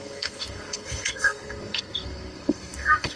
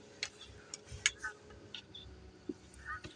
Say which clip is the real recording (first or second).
second